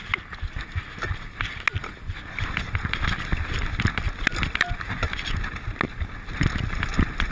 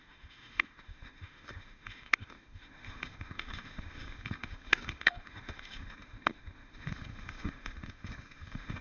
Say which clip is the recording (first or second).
first